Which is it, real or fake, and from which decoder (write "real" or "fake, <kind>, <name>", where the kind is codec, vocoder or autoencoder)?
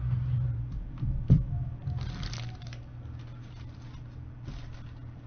real